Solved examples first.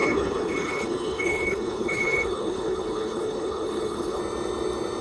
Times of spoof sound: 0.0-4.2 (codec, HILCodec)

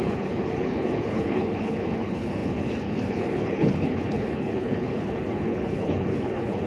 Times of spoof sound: 0.0-6.7 (codec, HILCodec)

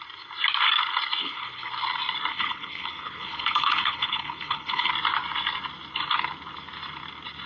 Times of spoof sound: 1.2-1.7 (codec, HILCodec); 2.3-4.9

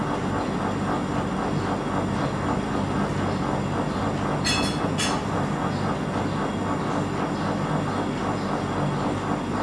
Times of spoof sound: none

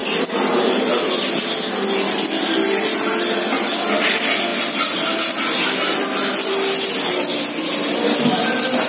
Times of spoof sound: none

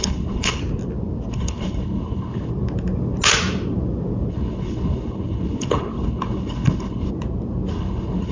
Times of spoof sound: 0.0-0.6 (codec, HILCodec); 1.3-2.5; 4.3-7.1; 7.7-8.3

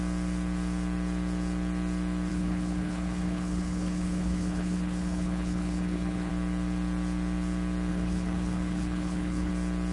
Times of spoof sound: 2.3-6.3 (codec, HILCodec); 7.9-9.5

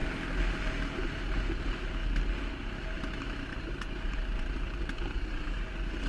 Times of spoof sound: none